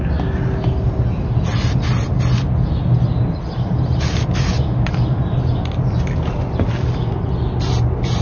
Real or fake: real